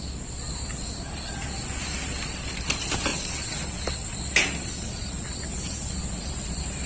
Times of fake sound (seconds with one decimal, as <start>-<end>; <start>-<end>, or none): none